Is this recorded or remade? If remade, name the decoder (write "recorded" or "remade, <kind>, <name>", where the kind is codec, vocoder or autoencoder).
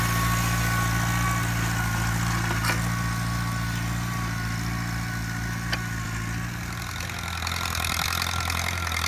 recorded